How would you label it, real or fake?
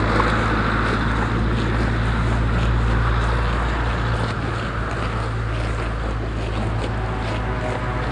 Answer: real